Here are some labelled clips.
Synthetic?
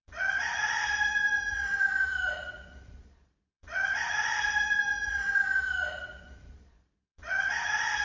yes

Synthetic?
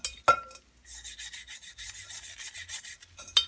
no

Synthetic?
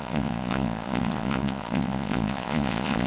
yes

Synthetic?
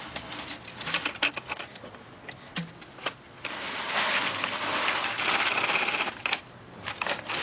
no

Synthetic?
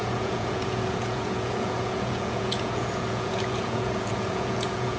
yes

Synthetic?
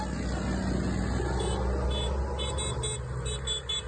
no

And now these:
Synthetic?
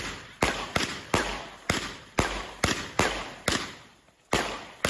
no